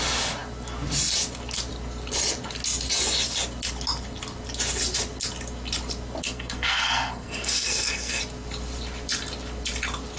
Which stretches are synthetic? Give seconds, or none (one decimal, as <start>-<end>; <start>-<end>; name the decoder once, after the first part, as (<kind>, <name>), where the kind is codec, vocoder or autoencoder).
6.2-8.2 (codec, SNAC)